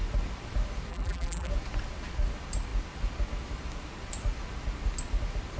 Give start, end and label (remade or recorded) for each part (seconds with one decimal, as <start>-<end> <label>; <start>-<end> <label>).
0.0-0.9 recorded; 0.9-1.5 remade; 1.5-5.6 recorded